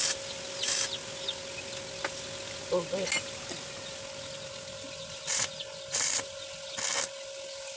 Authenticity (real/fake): real